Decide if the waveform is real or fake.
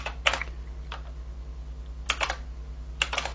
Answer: real